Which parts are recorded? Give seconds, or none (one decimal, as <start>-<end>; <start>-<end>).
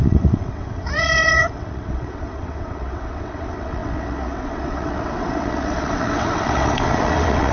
none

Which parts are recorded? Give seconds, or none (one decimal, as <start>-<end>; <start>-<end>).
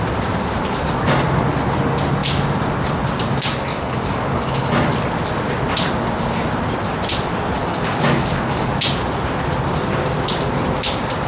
0.0-3.7; 4.7-7.6; 8.8-11.3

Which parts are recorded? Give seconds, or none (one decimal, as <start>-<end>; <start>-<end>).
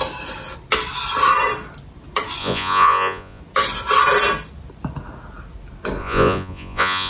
0.0-2.4; 3.4-6.0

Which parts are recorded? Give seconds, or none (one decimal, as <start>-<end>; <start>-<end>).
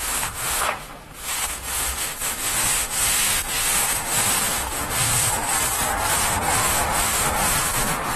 5.5-6.1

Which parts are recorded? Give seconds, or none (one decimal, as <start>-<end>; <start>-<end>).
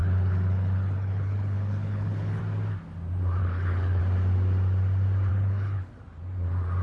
2.4-3.4; 4.0-5.3; 5.9-6.8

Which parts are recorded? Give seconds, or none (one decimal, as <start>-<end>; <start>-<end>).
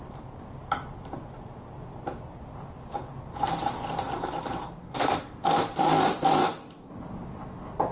0.0-4.8; 5.5-7.9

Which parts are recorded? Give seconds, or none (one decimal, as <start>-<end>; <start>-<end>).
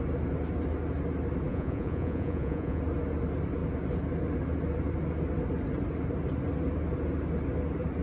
0.0-1.5; 2.8-8.0